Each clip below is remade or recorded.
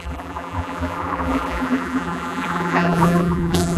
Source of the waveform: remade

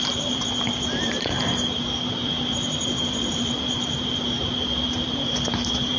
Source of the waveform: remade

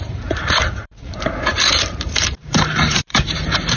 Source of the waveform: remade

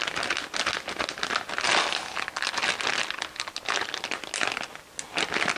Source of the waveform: recorded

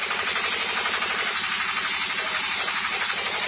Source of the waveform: remade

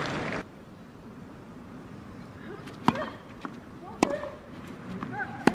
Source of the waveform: remade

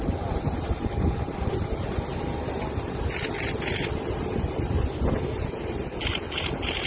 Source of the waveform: recorded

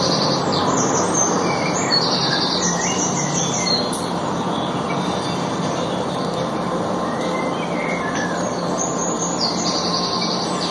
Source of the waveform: remade